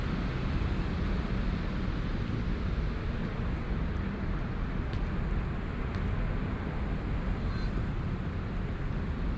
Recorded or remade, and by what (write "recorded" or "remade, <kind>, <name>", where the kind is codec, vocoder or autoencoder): recorded